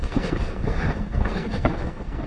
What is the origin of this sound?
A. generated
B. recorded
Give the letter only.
A